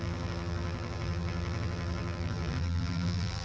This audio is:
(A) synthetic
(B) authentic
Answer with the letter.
A